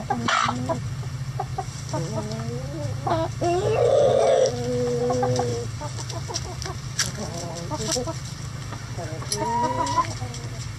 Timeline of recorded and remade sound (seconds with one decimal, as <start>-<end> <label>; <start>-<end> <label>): 0.0-5.5 recorded; 5.5-6.0 remade; 6.0-10.8 recorded